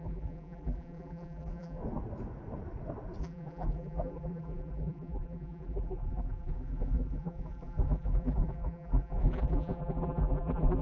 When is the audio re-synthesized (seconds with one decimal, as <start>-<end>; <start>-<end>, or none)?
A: 0.0-1.8; 3.2-10.8